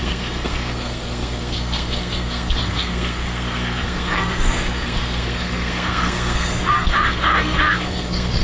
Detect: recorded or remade remade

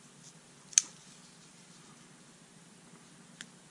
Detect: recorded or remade recorded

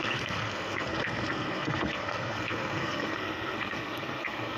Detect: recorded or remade remade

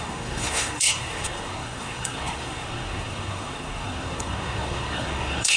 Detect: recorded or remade remade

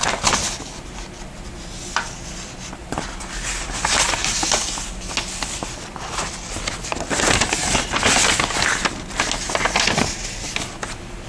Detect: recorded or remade recorded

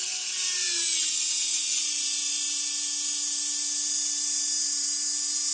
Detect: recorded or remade recorded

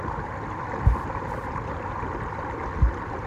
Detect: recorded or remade recorded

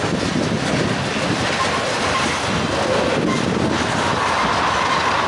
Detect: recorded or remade recorded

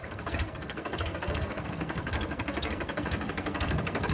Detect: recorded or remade remade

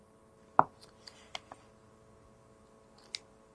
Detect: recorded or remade recorded